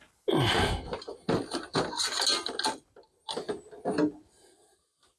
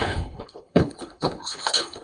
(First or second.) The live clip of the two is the first